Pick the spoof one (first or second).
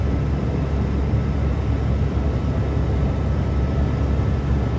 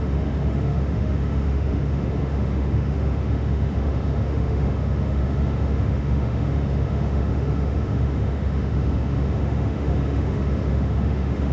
second